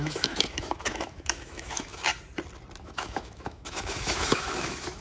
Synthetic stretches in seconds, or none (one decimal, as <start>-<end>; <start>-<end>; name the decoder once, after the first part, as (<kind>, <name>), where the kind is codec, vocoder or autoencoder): 0.0-2.1 (autoencoder, DAC-VAE); 2.8-5.0